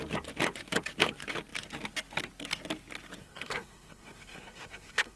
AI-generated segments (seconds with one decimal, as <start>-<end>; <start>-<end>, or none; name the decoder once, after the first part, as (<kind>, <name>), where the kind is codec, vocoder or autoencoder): 3.2-5.2 (codec, SNAC)